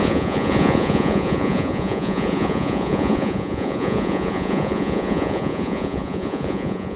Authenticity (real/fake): fake